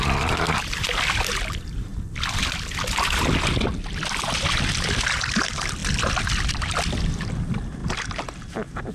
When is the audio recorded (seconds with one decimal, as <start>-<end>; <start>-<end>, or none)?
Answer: 0.0-8.9